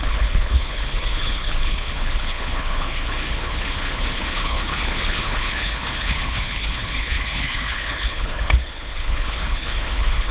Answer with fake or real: fake